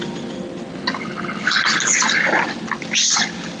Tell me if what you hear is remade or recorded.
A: recorded